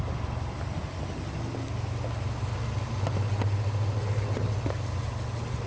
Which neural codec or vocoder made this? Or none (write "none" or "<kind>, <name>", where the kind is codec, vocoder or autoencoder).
none